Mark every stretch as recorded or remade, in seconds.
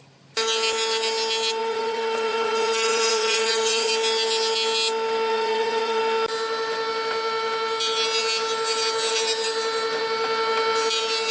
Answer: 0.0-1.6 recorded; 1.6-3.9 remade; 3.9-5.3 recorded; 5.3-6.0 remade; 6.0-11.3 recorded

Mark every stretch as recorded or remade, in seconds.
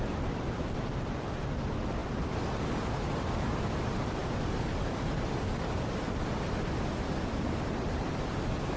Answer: 0.0-8.8 recorded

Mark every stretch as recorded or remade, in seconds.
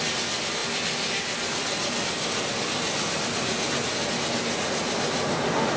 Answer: 0.0-5.8 recorded